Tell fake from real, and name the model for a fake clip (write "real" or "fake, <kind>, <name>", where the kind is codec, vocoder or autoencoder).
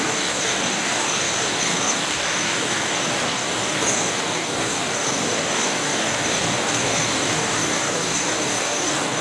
fake, codec, DAC